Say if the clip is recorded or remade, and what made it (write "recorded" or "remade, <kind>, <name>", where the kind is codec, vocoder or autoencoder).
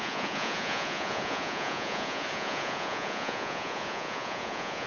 remade, vocoder, Vocos